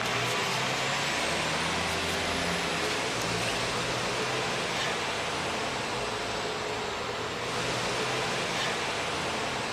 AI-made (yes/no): no